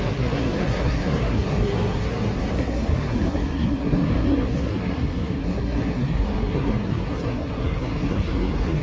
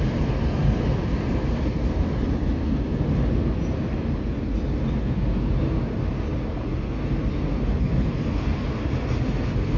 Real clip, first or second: second